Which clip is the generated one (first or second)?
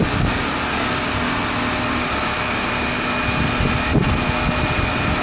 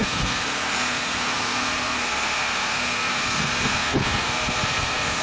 second